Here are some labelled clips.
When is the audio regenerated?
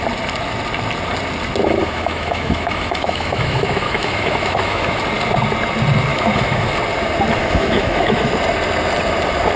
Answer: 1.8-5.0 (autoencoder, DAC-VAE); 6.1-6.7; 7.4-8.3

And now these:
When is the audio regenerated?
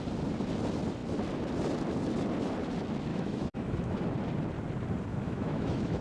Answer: 3.1-4.0 (autoencoder, DAC-VAE); 5.1-6.0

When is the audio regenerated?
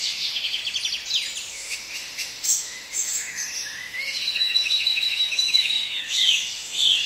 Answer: 0.0-0.6 (autoencoder, DAC-VAE); 1.5-7.1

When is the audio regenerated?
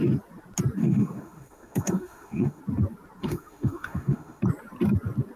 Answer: 0.8-2.6 (autoencoder, DAC-VAE); 3.2-4.4